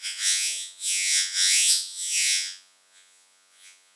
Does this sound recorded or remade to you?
remade